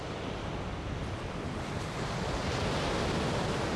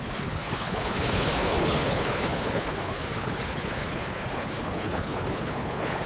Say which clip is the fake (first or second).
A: second